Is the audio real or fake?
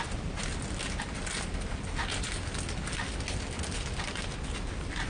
real